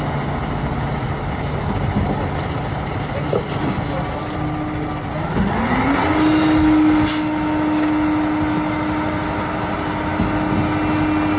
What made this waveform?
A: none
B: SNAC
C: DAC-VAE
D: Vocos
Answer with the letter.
A